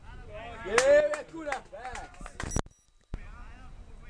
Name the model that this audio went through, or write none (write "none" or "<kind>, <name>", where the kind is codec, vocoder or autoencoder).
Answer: none